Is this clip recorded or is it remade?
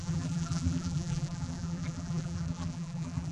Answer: remade